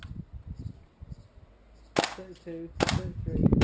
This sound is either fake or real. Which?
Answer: real